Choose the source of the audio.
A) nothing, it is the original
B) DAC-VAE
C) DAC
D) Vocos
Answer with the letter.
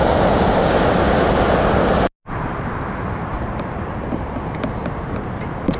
A